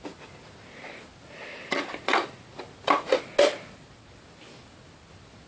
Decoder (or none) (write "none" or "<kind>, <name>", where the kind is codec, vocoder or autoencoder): none